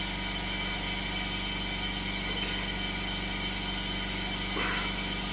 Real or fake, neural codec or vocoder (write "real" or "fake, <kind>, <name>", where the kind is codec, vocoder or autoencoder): real